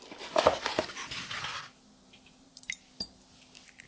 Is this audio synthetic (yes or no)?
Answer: no